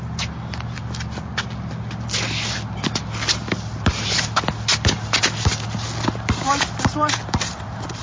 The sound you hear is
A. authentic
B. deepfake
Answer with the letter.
A